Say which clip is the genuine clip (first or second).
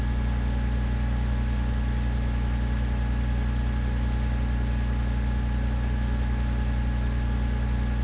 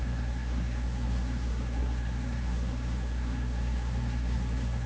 first